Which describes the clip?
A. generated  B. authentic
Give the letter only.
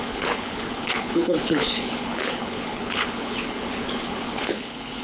A